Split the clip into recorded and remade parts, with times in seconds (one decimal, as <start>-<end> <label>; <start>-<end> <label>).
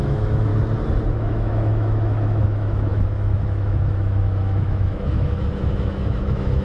0.0-0.5 remade; 0.5-1.1 recorded; 1.1-6.6 remade